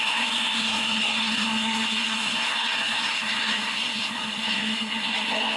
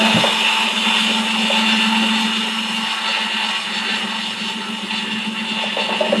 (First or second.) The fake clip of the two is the first